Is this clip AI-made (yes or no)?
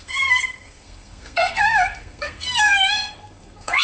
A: yes